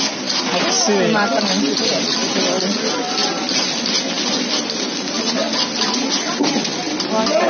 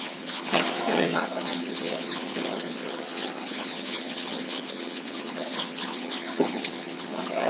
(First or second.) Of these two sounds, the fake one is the second